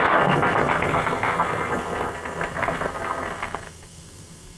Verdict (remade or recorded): remade